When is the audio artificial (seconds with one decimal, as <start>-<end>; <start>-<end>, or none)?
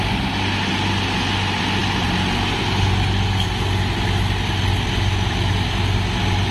none